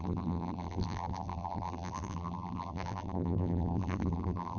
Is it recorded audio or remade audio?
remade